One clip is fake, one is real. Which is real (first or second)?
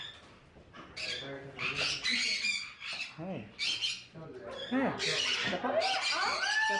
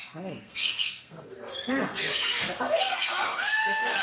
first